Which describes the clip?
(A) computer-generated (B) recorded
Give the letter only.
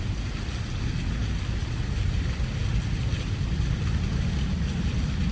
B